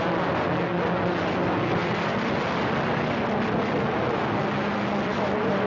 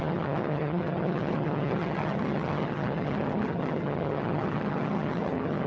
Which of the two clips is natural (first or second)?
first